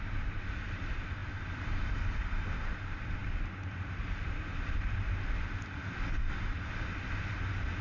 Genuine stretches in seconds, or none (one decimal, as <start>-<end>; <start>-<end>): 0.0-7.8